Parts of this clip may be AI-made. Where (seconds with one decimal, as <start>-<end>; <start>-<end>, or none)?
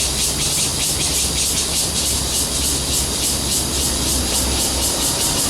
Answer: none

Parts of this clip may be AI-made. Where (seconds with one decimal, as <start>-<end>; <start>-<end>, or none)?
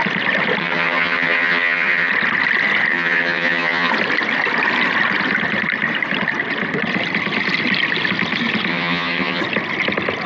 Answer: 0.6-2.1; 2.9-3.9; 8.7-9.4